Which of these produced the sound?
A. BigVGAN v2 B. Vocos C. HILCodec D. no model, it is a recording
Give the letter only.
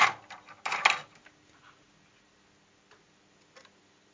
D